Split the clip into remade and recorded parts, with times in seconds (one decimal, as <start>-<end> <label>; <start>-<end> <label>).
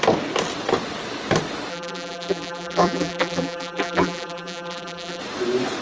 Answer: 0.0-1.7 recorded; 1.7-5.2 remade; 5.2-5.8 recorded